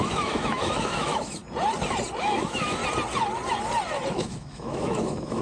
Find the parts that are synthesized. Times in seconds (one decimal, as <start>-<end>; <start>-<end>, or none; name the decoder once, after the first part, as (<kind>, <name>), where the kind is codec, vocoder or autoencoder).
0.0-1.4 (autoencoder, DAC-VAE); 2.2-2.8; 4.1-5.4